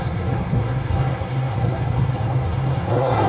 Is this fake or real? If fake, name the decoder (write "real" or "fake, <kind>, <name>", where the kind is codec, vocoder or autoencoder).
fake, codec, SNAC